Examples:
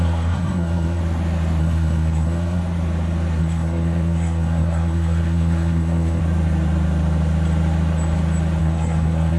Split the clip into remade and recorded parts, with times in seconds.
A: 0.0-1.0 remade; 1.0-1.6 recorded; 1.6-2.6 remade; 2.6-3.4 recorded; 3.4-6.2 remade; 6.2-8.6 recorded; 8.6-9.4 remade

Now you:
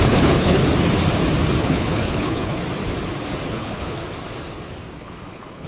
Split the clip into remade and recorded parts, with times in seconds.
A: 0.0-0.6 remade; 0.6-1.6 recorded; 1.6-2.6 remade; 2.6-3.5 recorded; 3.5-4.0 remade; 4.0-5.0 recorded; 5.0-5.7 remade

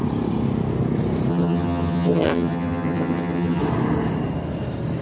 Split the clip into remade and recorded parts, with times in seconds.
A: 0.0-1.3 recorded; 1.3-3.6 remade; 3.6-5.0 recorded

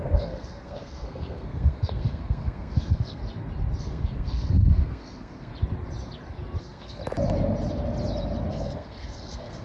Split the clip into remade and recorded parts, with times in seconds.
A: 0.0-3.2 remade; 3.2-3.8 recorded; 3.8-5.5 remade; 5.5-6.6 recorded; 6.6-7.0 remade; 7.0-8.5 recorded; 8.5-9.6 remade

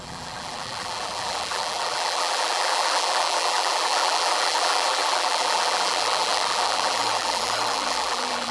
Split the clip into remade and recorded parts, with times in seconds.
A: 0.0-8.5 remade

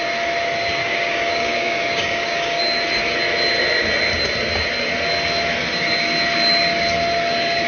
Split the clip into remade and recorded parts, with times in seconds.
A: 0.0-0.8 recorded; 0.8-2.6 remade; 2.6-7.7 recorded